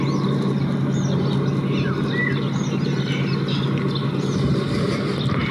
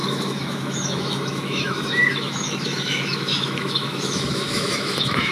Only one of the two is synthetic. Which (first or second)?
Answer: second